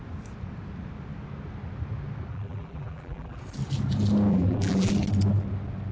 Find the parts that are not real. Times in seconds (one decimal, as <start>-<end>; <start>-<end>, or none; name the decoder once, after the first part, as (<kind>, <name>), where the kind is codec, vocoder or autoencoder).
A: 2.3-3.4 (vocoder, BigVGAN v2); 4.3-4.9